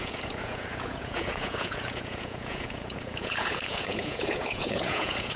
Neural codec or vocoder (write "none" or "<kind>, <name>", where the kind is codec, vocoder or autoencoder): vocoder, Vocos